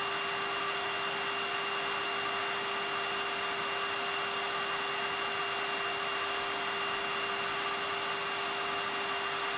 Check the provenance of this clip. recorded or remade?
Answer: recorded